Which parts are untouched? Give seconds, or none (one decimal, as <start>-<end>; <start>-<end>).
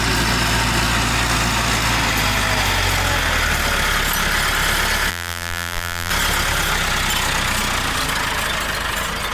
0.0-5.1; 6.1-9.3